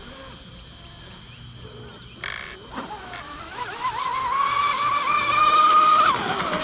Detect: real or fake real